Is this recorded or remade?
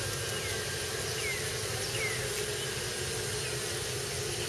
recorded